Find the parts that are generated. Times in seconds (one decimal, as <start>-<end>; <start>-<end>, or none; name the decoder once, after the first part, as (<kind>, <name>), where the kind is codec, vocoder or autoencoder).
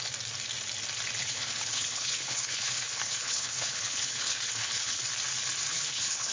1.2-5.0 (codec, HILCodec); 5.7-6.3